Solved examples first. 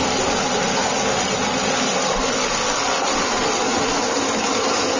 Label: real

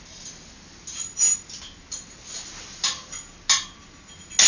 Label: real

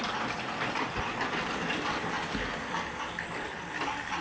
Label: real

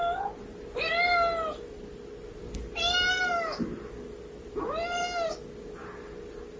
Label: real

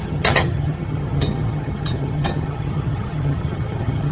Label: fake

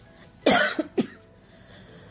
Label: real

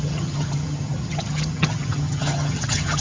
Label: fake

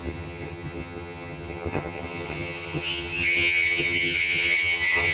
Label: fake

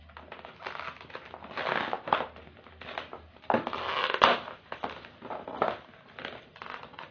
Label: real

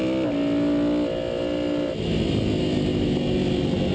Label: real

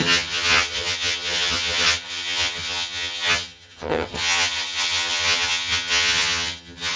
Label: fake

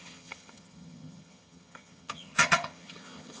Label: fake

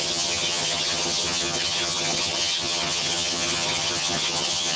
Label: fake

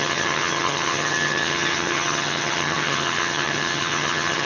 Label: fake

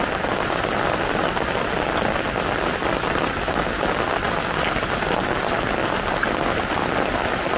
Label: real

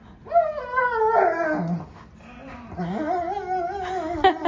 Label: real